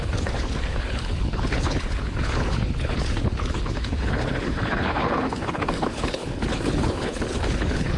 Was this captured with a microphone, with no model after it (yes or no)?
no